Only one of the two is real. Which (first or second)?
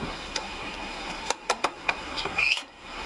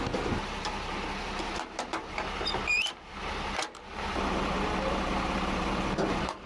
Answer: second